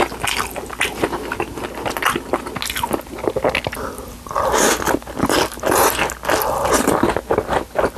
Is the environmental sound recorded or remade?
recorded